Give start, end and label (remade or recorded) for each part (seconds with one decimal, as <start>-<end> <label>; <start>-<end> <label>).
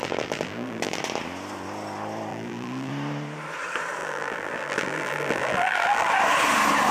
0.0-1.0 remade; 1.0-2.3 recorded; 2.3-2.9 remade; 2.9-4.0 recorded; 4.0-6.1 remade; 6.1-6.9 recorded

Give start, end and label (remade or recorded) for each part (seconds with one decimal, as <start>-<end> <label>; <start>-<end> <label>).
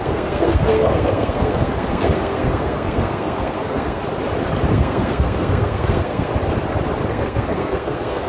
0.0-4.0 remade; 4.0-4.7 recorded; 4.7-6.3 remade; 6.3-7.1 recorded; 7.1-8.3 remade